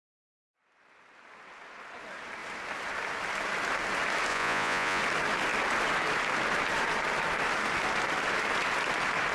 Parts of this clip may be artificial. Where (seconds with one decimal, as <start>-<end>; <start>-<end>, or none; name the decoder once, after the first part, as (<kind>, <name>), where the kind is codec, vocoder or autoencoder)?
4.3-5.0 (vocoder, Vocos)